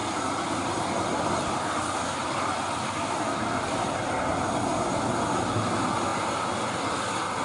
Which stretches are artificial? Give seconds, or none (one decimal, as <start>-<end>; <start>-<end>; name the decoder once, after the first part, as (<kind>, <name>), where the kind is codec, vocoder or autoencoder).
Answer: 0.0-4.4 (vocoder, BigVGAN v2); 6.1-7.0